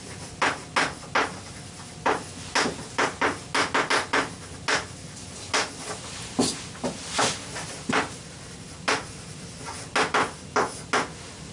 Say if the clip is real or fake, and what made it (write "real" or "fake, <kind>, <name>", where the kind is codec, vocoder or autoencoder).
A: real